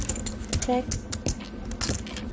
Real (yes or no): yes